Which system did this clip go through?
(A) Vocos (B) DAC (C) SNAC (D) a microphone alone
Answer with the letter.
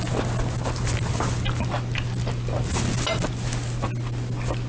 D